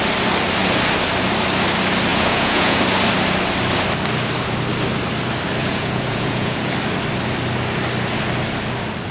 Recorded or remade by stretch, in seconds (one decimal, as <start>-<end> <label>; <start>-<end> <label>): 0.0-2.1 recorded; 2.1-2.8 remade; 2.8-5.6 recorded; 5.6-6.7 remade; 6.7-9.1 recorded